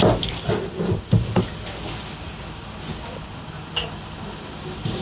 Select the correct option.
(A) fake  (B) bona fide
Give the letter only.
B